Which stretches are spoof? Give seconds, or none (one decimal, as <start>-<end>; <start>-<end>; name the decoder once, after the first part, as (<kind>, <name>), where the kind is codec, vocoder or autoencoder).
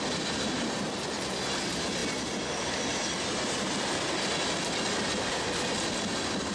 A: none